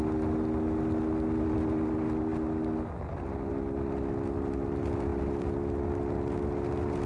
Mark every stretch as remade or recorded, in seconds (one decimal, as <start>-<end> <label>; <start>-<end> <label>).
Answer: 0.0-7.1 recorded